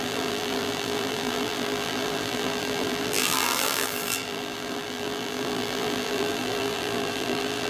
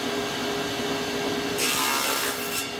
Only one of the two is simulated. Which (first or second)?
first